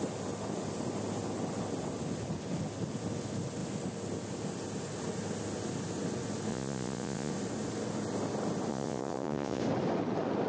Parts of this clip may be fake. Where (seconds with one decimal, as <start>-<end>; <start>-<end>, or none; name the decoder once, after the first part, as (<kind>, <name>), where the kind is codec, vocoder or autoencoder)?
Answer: 6.5-7.3 (vocoder, Vocos); 8.7-9.6